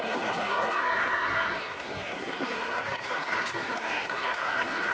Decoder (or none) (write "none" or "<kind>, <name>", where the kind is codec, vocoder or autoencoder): codec, SNAC